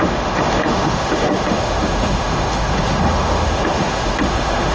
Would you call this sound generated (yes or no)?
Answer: yes